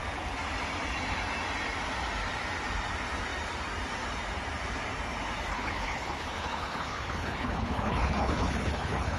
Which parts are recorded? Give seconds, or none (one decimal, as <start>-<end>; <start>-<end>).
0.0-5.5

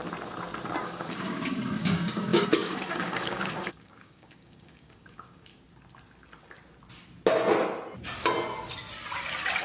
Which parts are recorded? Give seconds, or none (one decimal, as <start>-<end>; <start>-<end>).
0.0-0.8; 5.5-9.6

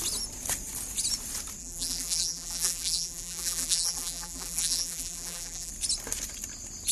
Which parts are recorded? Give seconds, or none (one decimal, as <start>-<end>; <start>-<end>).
0.0-1.6; 5.7-6.9